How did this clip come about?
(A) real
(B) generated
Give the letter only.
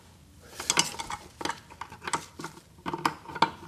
A